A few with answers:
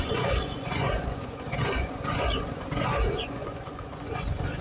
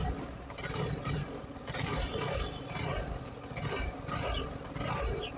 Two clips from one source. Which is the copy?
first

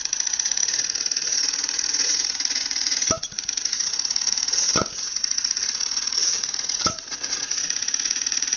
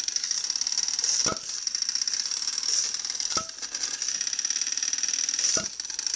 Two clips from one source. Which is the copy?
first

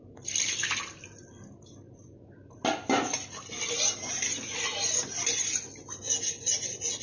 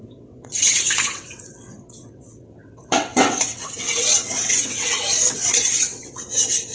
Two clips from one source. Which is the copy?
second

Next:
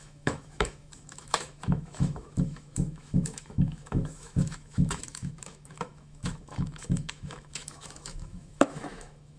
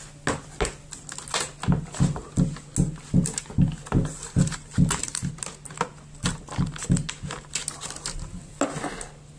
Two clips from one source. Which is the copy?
first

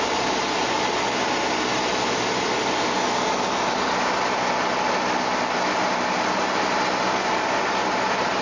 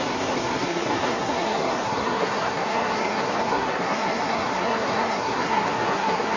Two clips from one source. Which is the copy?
second